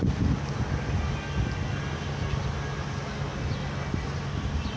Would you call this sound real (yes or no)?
yes